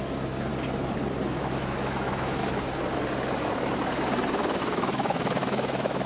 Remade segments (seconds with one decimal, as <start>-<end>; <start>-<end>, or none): 0.0-0.5; 1.2-2.4; 4.6-6.1